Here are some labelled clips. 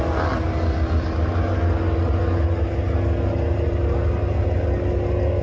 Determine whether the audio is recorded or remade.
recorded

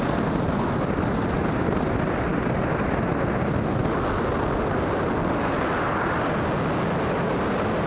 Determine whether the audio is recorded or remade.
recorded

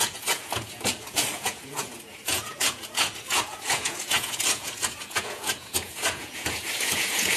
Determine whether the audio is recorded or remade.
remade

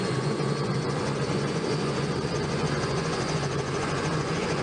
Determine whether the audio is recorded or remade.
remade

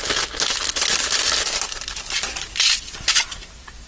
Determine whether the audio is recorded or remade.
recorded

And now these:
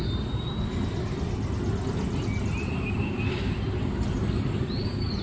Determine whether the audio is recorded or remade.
recorded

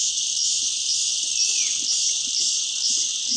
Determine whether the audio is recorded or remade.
recorded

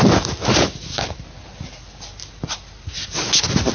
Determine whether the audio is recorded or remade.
recorded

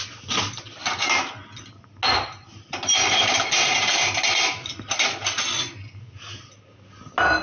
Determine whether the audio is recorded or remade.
recorded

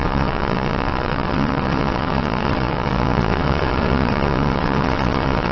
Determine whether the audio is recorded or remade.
remade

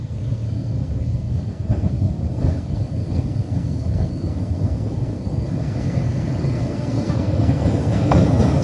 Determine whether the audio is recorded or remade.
remade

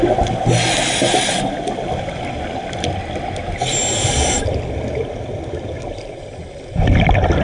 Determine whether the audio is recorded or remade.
recorded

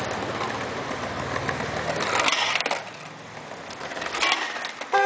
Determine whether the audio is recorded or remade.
recorded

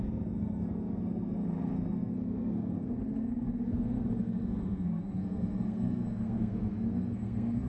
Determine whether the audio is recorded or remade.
remade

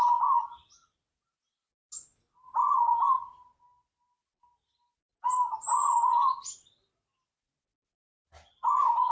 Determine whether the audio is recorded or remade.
recorded